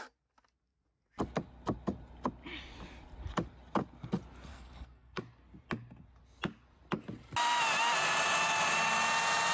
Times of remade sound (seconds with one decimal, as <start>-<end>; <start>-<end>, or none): 4.5-5.2